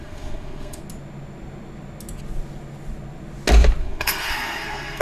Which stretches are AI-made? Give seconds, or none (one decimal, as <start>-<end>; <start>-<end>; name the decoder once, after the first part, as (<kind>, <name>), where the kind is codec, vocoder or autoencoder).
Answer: 0.0-0.8 (codec, SNAC); 3.8-5.0